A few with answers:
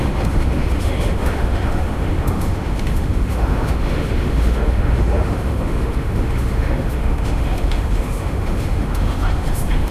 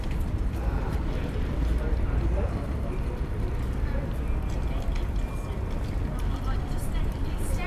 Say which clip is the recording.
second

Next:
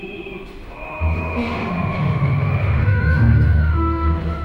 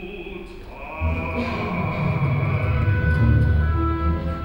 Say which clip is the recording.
second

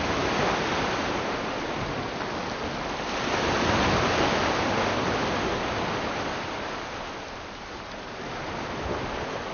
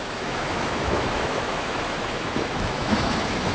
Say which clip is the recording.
first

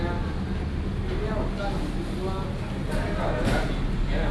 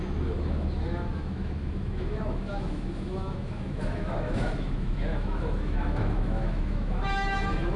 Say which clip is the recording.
first